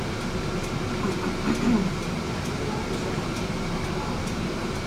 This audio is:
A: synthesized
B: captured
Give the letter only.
B